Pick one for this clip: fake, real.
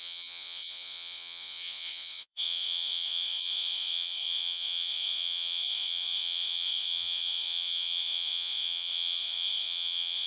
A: fake